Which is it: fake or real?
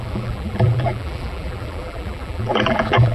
fake